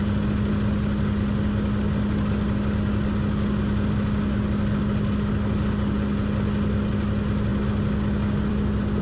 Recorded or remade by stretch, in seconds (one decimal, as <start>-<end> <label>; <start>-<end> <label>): 0.0-9.0 recorded